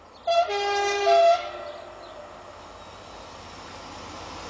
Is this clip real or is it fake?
real